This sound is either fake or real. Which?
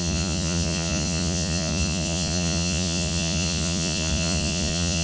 fake